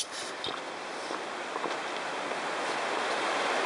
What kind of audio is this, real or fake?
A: real